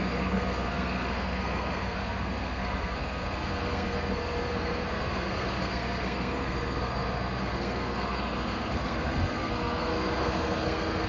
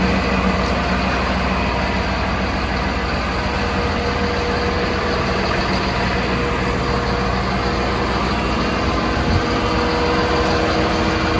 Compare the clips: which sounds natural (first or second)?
second